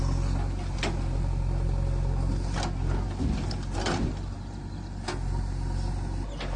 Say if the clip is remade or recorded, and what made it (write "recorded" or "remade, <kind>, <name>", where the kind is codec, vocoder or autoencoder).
recorded